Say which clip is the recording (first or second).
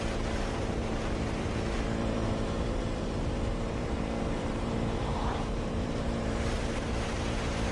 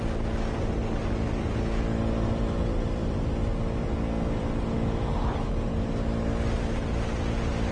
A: second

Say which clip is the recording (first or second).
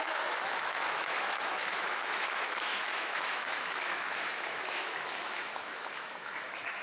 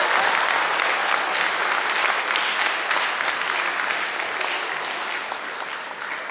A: second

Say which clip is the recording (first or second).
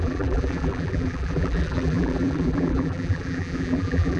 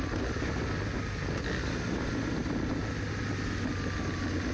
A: second